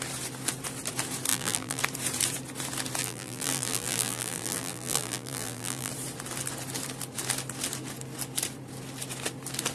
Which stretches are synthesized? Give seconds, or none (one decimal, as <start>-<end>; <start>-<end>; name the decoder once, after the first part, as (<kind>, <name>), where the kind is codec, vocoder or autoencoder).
1.3-1.8 (vocoder, BigVGAN v2); 3.0-5.9